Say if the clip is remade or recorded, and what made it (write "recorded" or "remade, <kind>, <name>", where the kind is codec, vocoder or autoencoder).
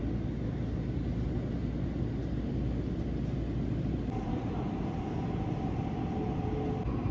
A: recorded